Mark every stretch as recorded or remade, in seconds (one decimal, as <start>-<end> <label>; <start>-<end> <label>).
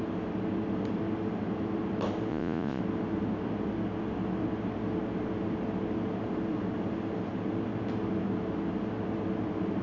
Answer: 0.0-2.3 recorded; 2.3-2.8 remade; 2.8-9.8 recorded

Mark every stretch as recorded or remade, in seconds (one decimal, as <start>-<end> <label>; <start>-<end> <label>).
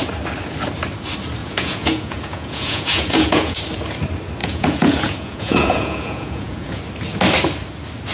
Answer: 0.0-1.4 recorded; 1.4-3.6 remade; 3.6-4.4 recorded; 4.4-6.8 remade; 6.8-8.1 recorded